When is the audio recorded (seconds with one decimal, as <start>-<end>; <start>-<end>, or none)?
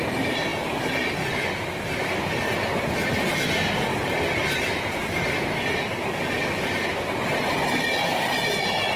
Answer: 0.0-9.0